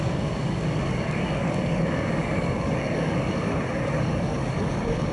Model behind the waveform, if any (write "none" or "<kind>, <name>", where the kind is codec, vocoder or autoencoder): codec, DAC